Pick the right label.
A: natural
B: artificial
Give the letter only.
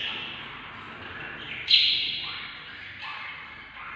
A